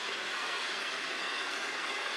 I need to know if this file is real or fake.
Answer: fake